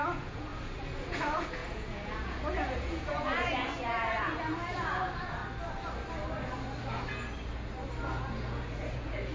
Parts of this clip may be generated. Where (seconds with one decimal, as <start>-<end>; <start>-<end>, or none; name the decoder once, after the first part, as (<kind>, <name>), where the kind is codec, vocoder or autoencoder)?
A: 0.0-5.4 (vocoder, Vocos); 8.0-9.3